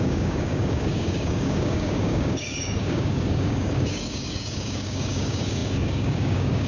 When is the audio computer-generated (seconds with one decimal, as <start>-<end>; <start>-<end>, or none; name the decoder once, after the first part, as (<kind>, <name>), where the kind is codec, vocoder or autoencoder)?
0.0-6.7 (codec, DAC)